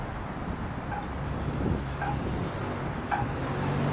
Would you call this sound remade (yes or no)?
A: no